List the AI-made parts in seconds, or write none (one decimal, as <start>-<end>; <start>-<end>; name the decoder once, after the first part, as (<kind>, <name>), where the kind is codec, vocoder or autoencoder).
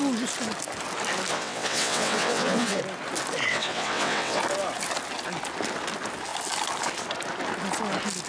1.3-2.8 (vocoder, WaveNeXt); 3.5-4.4